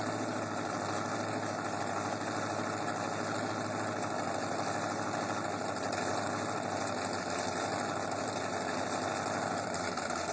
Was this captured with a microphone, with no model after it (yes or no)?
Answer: yes